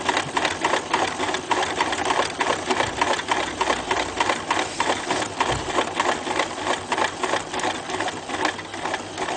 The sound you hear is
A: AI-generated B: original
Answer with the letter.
B